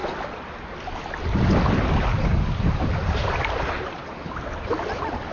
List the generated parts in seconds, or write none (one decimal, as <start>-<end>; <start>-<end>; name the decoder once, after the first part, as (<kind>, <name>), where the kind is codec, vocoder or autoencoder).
none